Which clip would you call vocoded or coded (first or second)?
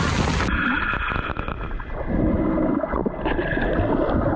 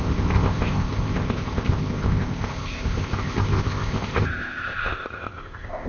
second